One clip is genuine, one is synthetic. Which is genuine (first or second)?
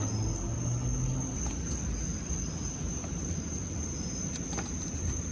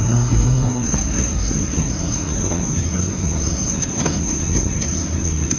first